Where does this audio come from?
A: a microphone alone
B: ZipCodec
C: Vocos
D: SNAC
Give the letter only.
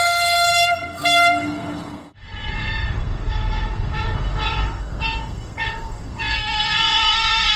D